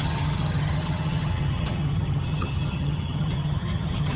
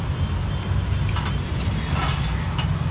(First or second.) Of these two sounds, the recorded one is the second